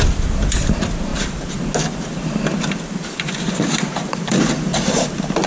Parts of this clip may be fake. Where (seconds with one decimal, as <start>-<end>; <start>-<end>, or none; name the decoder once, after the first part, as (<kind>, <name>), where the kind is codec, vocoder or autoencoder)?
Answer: 0.0-1.1 (vocoder, BigVGAN v2); 2.6-4.7